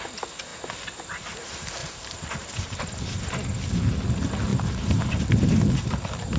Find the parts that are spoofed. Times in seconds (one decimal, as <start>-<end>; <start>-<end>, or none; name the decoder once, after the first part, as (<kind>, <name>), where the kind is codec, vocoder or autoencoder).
1.8-2.8 (vocoder, BigVGAN v2); 4.5-5.7

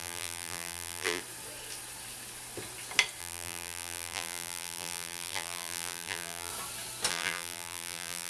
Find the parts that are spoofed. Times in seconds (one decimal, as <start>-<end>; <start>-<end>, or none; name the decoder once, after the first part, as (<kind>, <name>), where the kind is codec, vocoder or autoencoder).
0.0-1.2 (vocoder, BigVGAN v2); 3.2-6.5; 7.1-8.3

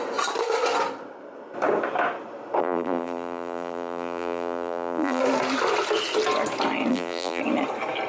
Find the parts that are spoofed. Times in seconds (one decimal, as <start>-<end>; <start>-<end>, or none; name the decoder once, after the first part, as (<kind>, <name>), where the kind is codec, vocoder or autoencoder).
2.6-5.2 (vocoder, BigVGAN v2); 6.9-7.4

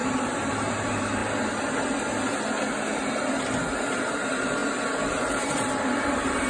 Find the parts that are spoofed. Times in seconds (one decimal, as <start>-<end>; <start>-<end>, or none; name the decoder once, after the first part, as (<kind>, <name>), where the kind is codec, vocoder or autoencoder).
0.0-1.2 (vocoder, BigVGAN v2); 3.9-6.5

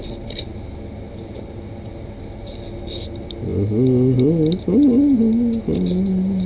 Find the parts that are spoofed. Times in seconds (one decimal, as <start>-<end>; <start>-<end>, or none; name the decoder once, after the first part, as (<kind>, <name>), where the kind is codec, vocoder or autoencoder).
0.0-0.5 (vocoder, BigVGAN v2); 1.4-1.9; 2.8-3.5

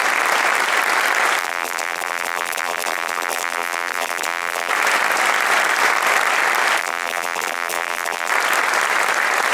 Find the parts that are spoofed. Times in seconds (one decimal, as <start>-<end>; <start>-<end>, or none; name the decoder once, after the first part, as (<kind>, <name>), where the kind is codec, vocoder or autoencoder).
1.4-4.7 (vocoder, BigVGAN v2); 6.8-8.3

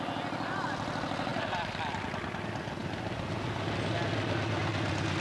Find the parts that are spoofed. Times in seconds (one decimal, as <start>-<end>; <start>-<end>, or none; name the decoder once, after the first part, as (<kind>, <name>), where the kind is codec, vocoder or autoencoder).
1.3-2.4 (vocoder, BigVGAN v2)